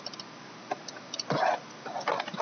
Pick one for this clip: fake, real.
real